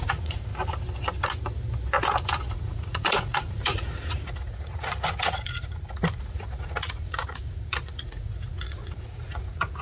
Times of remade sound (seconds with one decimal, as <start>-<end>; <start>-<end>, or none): 0.0-0.5; 2.5-9.8